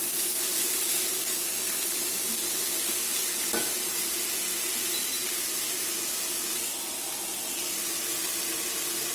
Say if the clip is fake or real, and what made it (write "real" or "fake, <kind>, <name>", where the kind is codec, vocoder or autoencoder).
real